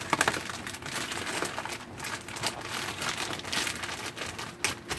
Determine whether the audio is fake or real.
real